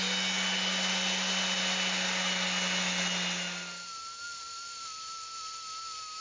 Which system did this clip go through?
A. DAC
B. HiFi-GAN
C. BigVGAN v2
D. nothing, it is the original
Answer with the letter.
D